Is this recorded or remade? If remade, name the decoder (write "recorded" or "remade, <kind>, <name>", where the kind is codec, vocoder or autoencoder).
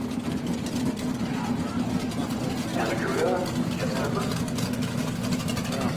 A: recorded